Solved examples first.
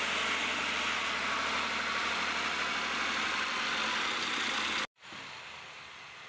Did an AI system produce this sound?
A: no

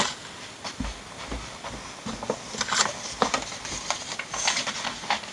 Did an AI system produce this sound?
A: no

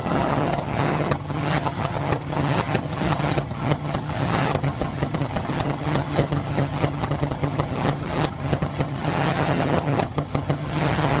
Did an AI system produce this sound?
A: yes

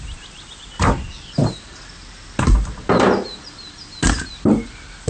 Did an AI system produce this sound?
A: no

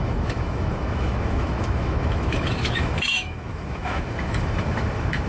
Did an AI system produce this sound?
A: yes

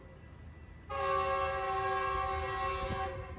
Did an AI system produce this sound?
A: no